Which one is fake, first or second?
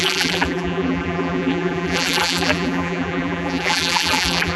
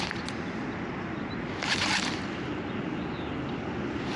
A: first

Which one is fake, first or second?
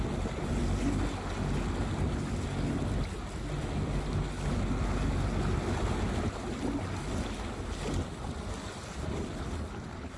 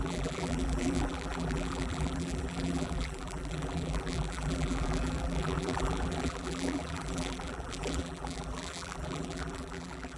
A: second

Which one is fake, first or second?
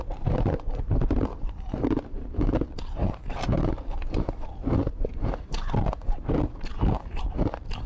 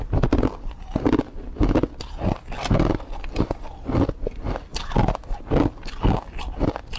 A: first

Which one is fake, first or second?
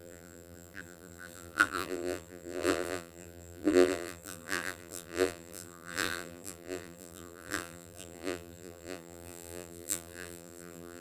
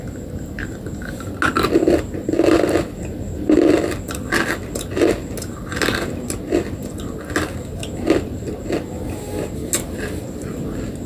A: first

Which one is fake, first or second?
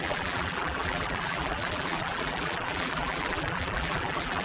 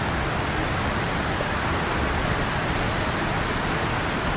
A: first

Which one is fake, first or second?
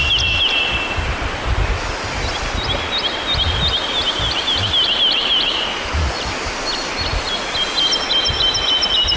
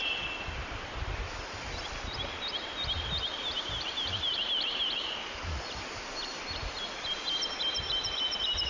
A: second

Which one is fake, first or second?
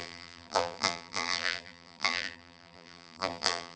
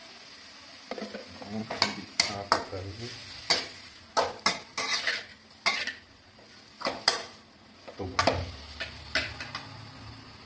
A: first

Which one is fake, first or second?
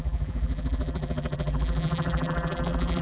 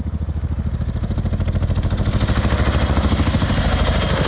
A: first